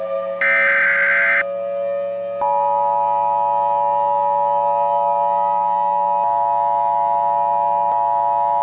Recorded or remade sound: recorded